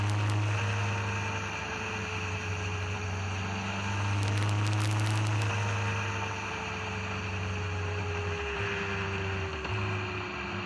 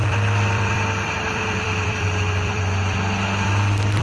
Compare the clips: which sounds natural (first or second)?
first